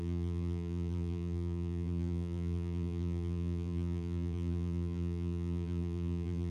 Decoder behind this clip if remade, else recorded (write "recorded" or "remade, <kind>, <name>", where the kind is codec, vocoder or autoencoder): remade, vocoder, BigVGAN v2